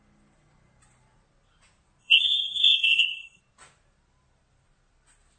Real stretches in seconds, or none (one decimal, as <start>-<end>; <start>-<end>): 0.0-2.0; 3.4-5.4

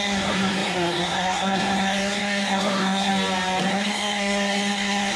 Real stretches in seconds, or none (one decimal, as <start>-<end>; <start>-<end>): 3.1-3.7

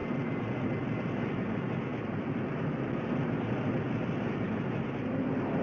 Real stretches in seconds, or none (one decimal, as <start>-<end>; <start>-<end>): 0.0-5.6

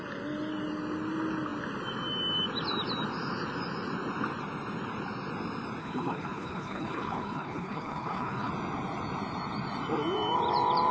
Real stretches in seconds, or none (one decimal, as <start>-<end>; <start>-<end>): 0.0-5.8; 8.5-10.9

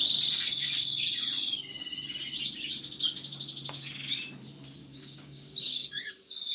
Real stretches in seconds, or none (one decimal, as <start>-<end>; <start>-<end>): 0.0-4.8; 6.1-6.5

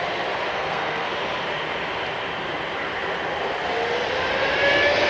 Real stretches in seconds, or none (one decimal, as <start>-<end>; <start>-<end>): 0.0-0.5; 1.1-5.1

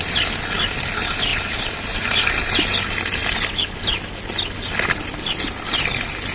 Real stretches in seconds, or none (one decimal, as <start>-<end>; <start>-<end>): 0.0-1.3; 2.3-6.3

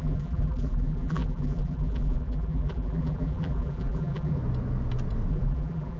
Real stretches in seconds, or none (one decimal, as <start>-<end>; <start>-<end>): 4.4-5.3